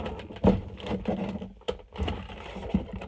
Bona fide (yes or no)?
yes